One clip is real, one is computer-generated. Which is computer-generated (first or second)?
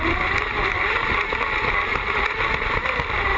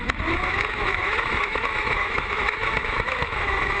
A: second